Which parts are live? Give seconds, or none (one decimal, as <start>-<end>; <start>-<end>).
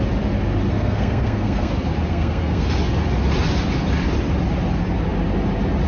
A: 0.0-0.7; 1.7-2.1; 2.7-5.9